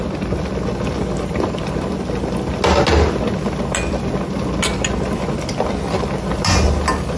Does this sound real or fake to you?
real